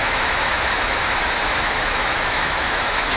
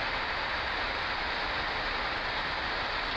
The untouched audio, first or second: second